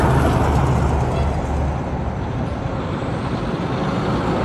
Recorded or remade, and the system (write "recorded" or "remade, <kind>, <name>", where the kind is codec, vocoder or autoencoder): recorded